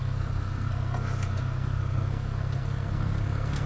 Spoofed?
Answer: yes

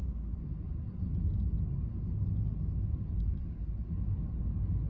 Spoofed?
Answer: no